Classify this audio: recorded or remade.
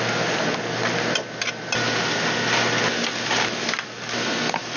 recorded